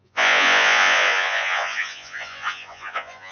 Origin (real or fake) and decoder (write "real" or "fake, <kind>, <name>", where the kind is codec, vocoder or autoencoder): fake, vocoder, Vocos